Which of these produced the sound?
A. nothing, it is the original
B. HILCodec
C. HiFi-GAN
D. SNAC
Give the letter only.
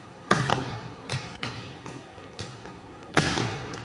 D